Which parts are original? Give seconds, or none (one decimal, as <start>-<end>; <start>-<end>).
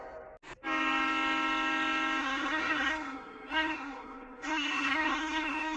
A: 0.0-2.2